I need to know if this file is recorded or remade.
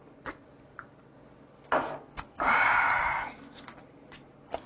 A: recorded